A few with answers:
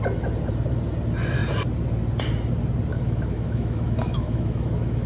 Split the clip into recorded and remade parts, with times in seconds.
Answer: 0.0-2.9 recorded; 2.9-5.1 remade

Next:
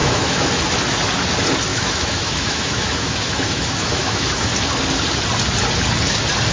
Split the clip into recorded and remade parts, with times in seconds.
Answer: 0.0-0.6 remade; 0.6-1.7 recorded; 1.7-4.5 remade; 4.5-6.5 recorded

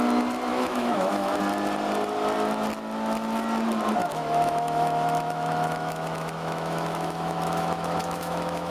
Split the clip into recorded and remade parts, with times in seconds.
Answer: 0.0-0.5 recorded; 0.5-1.4 remade; 1.4-4.0 recorded; 4.0-8.7 remade

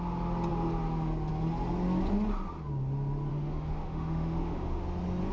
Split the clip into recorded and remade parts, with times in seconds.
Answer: 0.0-3.3 recorded; 3.3-4.8 remade; 4.8-5.3 recorded

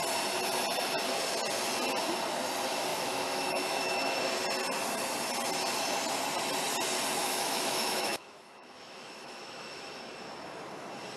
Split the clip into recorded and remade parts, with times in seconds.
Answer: 0.0-2.9 recorded; 2.9-4.2 remade; 4.2-7.2 recorded; 7.2-10.0 remade; 10.0-11.2 recorded

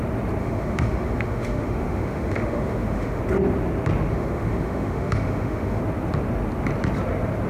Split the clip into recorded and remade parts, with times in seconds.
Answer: 0.0-0.4 recorded; 0.4-3.2 remade; 3.2-4.1 recorded; 4.1-5.8 remade; 5.8-7.5 recorded

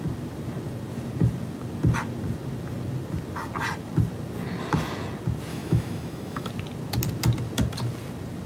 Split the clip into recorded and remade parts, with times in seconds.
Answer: 0.0-5.5 recorded; 5.5-6.5 remade; 6.5-8.5 recorded

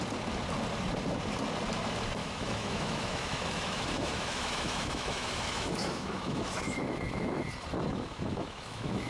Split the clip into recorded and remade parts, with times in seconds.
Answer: 0.0-2.2 recorded; 2.2-7.4 remade; 7.4-7.9 recorded; 7.9-9.1 remade